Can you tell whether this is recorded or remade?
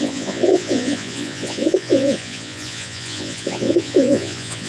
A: remade